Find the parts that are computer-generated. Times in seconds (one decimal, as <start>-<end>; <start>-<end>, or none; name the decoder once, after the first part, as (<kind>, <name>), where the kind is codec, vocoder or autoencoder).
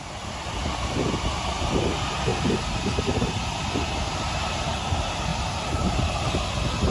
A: 2.3-3.1 (vocoder, BigVGAN v2); 5.3-6.3